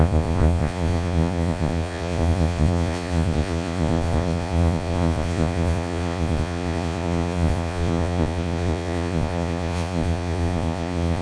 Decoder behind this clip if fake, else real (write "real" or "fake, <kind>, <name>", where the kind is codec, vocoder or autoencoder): fake, vocoder, Vocos